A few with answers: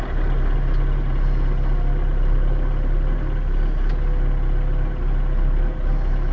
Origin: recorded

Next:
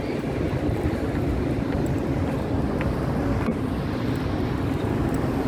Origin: recorded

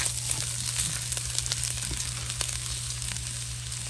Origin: recorded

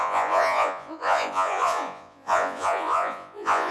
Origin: remade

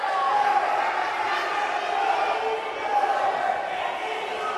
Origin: recorded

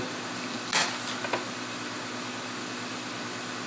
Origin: recorded